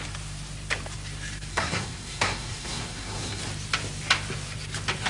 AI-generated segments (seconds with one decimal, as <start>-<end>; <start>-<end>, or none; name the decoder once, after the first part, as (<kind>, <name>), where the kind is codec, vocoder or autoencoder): 1.5-3.4 (codec, SNAC)